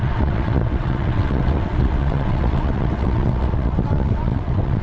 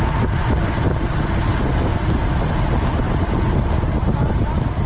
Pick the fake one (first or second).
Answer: first